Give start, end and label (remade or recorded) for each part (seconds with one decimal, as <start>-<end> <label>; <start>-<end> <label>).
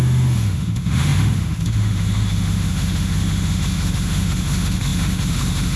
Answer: 0.0-5.8 remade